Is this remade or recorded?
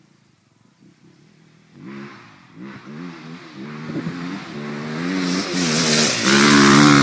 recorded